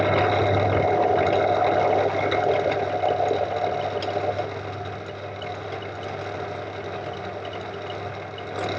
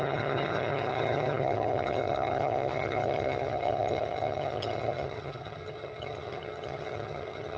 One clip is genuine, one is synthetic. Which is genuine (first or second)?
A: first